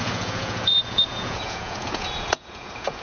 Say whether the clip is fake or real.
fake